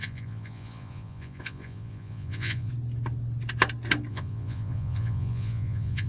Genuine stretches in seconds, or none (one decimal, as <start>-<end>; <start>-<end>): 2.7-4.1